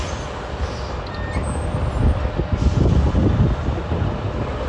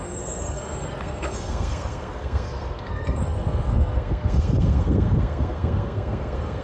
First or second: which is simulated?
second